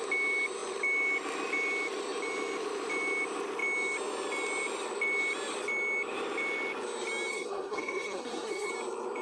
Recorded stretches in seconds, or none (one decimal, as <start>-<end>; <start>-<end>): 0.0-7.3; 8.7-9.2